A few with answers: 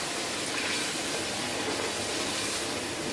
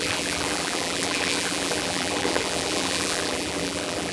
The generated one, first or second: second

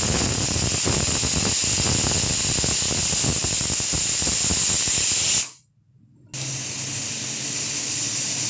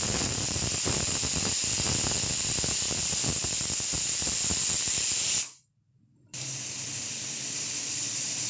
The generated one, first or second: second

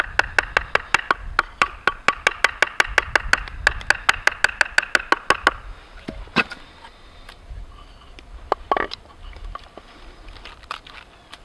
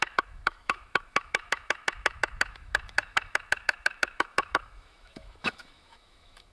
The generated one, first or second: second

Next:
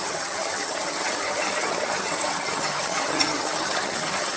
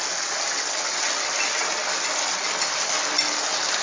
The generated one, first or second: first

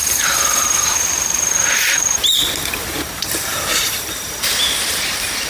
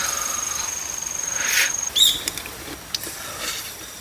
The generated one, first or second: first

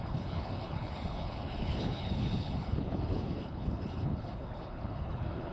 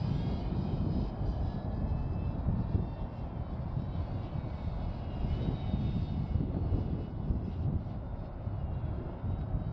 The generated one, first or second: first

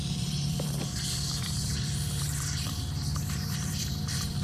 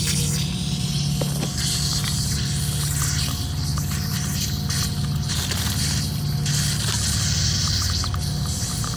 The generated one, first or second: first